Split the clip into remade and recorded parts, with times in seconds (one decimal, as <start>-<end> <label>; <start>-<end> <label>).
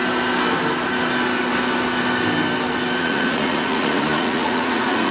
0.0-3.0 recorded; 3.0-5.1 remade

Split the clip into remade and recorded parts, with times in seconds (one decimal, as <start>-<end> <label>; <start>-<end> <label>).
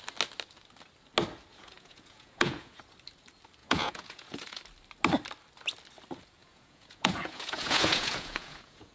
0.0-1.5 recorded; 1.5-2.8 remade; 2.8-3.6 recorded; 3.6-4.6 remade; 4.6-6.4 recorded; 6.4-8.9 remade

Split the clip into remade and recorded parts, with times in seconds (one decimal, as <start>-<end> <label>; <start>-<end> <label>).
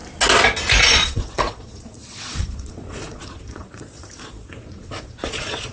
0.0-0.8 recorded; 0.8-5.7 remade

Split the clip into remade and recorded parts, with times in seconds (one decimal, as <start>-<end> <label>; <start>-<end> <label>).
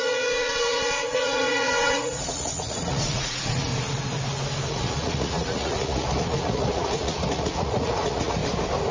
0.0-3.7 remade; 3.7-4.7 recorded; 4.7-8.4 remade; 8.4-8.9 recorded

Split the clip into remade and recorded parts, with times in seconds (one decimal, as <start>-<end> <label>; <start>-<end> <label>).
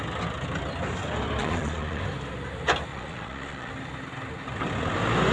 0.0-1.4 recorded; 1.4-2.0 remade; 2.0-2.9 recorded; 2.9-3.7 remade; 3.7-5.3 recorded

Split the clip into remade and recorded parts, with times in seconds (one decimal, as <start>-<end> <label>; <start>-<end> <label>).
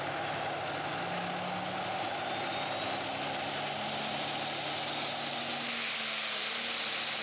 0.0-7.2 recorded